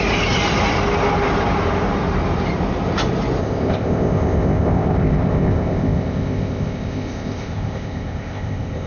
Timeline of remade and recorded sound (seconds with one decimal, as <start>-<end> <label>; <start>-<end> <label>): 0.0-3.4 recorded; 3.4-8.9 remade